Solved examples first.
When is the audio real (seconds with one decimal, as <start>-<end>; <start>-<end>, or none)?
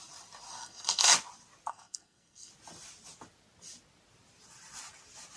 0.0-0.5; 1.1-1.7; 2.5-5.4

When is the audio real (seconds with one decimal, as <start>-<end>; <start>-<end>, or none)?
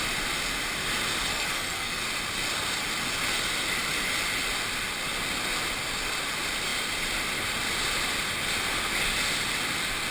0.0-1.3; 2.0-10.1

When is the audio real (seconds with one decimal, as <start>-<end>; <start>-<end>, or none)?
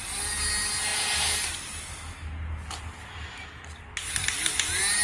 0.0-5.0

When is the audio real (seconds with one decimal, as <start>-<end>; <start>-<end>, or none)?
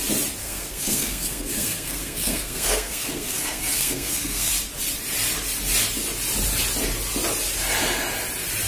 0.0-0.4; 4.5-8.7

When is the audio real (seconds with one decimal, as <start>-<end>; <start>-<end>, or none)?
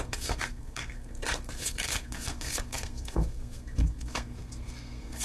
none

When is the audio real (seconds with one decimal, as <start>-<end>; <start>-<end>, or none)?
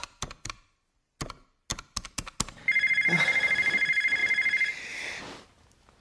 0.0-6.0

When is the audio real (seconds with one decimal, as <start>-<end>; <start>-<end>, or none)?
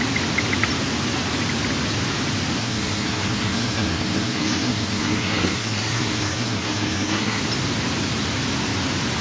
0.0-2.6; 7.4-9.2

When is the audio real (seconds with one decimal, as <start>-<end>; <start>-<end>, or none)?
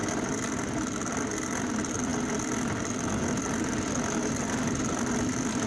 0.0-5.7